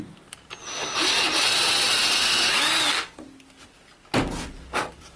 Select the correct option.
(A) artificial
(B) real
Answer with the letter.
B